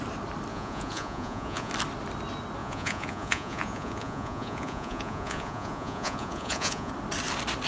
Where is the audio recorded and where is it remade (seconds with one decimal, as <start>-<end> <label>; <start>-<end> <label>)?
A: 0.0-0.5 recorded; 0.5-1.7 remade; 1.7-2.6 recorded; 2.6-6.9 remade; 6.9-7.7 recorded